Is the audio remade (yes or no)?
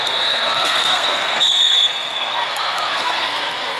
yes